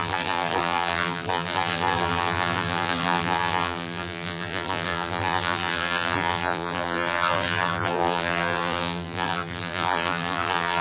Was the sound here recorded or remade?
remade